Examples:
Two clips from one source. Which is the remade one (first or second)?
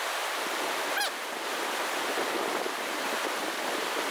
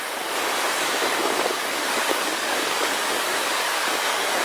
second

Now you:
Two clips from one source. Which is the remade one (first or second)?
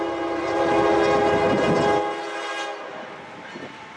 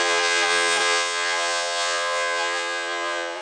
second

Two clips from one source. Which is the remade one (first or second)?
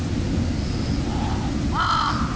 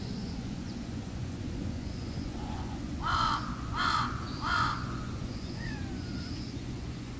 second